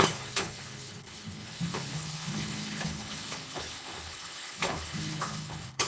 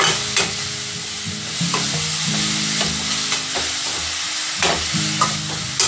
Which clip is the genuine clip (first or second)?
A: second